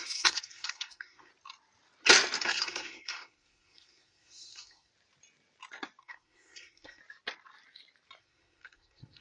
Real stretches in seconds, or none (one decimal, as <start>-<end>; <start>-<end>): 1.3-2.4; 4.9-6.0; 7.0-8.2

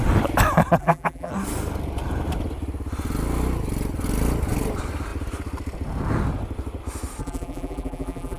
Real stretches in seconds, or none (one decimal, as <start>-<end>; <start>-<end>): 0.0-0.8; 1.3-7.2

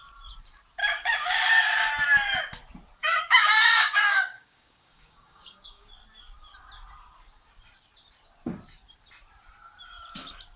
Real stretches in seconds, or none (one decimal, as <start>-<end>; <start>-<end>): 0.0-0.8; 1.9-3.0; 5.9-10.6

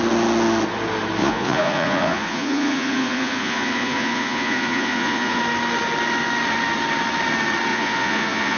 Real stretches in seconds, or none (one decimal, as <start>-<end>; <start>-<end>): 0.0-1.2; 5.4-7.7

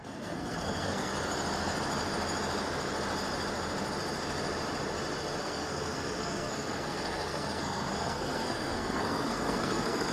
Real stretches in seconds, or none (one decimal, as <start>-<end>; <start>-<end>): 1.1-5.4

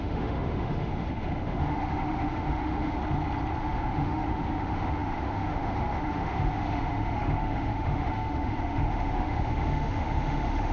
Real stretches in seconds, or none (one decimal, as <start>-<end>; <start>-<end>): 3.0-3.6

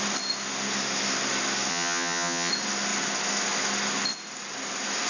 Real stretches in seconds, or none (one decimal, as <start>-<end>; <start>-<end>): 0.0-1.7; 2.5-5.1

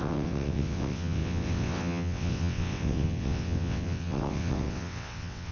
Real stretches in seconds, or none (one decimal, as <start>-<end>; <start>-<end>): none